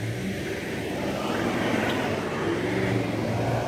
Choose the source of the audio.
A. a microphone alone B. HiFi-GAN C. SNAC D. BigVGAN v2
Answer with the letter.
A